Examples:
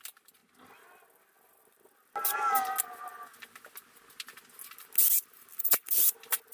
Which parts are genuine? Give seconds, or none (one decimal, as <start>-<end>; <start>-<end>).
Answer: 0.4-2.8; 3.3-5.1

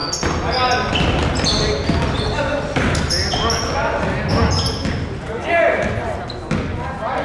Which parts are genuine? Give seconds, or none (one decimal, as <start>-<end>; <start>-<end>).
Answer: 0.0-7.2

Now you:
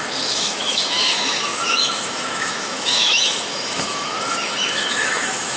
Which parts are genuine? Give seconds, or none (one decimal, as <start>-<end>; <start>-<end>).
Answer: none

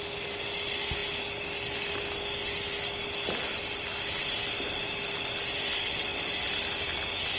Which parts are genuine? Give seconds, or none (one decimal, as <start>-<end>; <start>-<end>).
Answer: 0.0-6.1; 6.6-7.4